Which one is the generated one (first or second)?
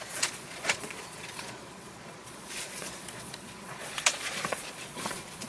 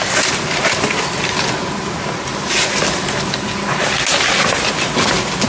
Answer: first